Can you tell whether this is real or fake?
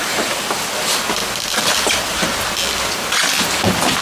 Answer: real